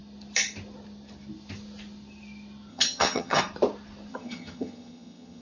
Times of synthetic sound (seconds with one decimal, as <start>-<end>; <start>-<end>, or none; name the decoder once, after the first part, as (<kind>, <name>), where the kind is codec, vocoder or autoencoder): 2.7-3.4 (vocoder, HiFi-GAN); 4.1-5.4